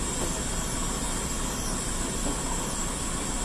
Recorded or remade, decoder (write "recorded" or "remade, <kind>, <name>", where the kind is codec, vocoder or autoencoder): recorded